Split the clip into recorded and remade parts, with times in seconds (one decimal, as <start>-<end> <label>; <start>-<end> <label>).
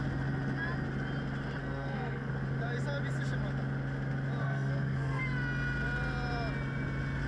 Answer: 0.0-1.6 recorded; 1.6-2.3 remade; 2.3-4.4 recorded; 4.4-5.2 remade; 5.2-7.3 recorded